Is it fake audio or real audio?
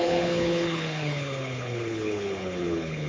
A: fake